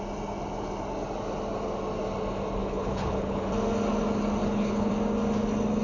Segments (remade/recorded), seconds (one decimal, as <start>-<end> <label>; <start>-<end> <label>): 0.0-2.6 recorded; 2.6-3.5 remade; 3.5-4.4 recorded; 4.4-4.9 remade; 4.9-5.8 recorded